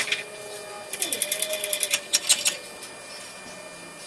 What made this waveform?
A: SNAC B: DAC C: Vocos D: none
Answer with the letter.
D